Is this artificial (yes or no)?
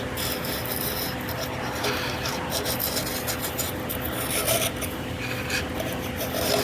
no